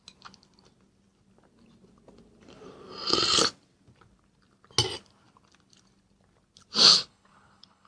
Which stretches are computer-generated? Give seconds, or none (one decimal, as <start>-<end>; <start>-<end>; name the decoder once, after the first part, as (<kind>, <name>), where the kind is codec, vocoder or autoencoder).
6.9-7.9 (codec, HILCodec)